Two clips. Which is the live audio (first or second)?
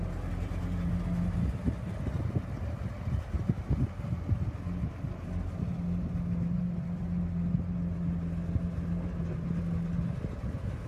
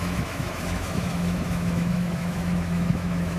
first